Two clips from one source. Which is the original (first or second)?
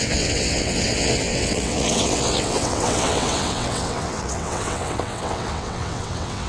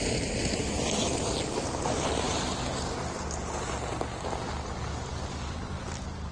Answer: second